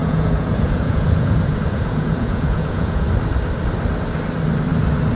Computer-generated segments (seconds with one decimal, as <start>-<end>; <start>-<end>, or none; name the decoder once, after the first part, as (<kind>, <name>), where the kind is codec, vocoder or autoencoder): 0.0-3.1 (vocoder, Vocos)